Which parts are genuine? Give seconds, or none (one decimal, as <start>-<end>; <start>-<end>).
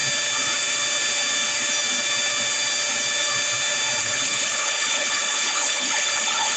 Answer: 0.0-4.0